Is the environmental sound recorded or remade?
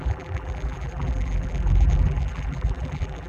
remade